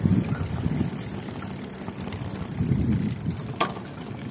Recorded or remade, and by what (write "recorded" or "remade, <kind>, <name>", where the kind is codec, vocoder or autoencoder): recorded